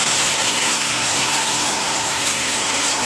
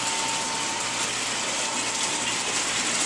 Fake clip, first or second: first